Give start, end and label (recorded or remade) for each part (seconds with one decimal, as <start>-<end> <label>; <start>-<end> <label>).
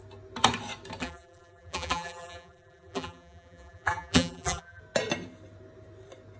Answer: 0.0-1.0 recorded; 1.0-4.8 remade; 4.8-6.4 recorded